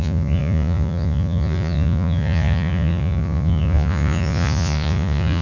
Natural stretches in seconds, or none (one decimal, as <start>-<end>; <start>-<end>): none